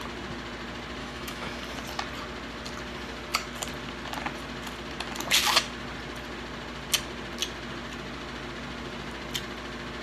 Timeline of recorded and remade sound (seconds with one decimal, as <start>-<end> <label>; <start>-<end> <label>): 0.0-1.0 recorded; 1.0-1.6 remade; 1.6-10.0 recorded